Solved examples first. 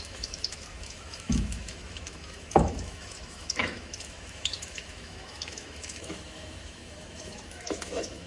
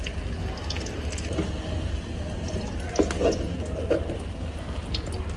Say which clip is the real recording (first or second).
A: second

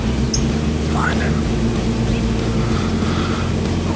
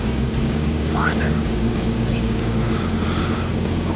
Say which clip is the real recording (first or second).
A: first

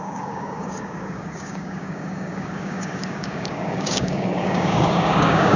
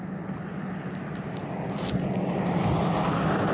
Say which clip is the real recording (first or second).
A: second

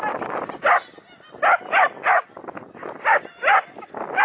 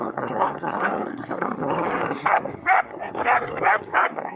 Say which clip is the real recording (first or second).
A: first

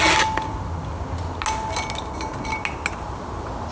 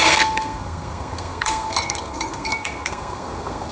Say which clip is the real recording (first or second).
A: first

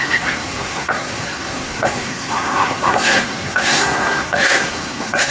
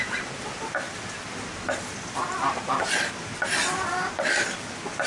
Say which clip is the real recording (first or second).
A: second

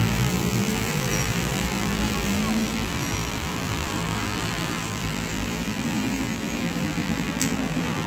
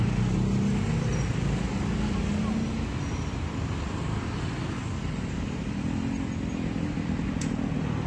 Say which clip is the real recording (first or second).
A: second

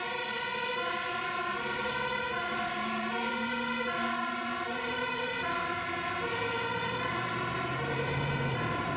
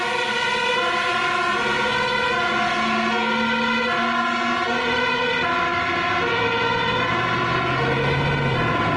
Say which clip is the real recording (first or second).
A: second